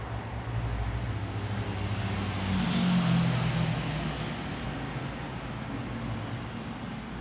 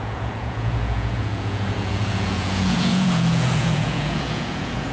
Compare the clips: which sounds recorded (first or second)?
first